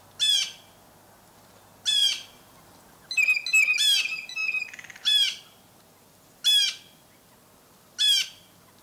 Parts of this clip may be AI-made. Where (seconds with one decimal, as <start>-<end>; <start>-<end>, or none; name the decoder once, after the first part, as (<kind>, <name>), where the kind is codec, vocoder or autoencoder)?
none